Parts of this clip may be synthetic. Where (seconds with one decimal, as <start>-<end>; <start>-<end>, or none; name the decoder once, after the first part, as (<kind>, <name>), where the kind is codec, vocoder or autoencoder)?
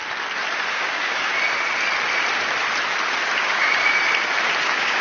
0.7-1.3 (codec, DAC); 3.4-3.8; 4.6-5.0